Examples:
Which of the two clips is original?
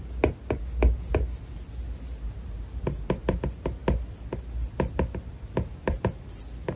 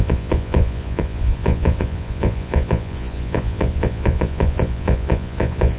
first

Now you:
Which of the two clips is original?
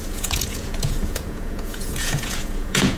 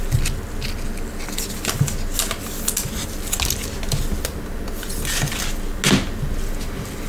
second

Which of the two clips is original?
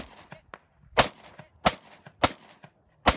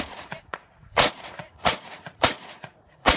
first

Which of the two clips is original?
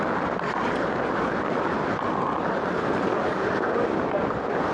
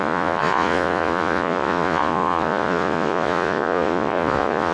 first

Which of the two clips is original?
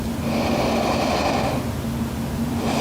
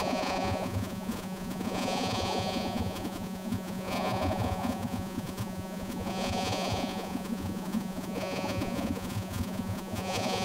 first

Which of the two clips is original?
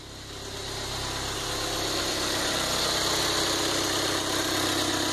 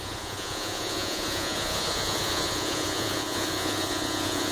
first